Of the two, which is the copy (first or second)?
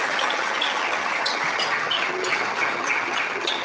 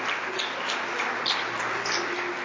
first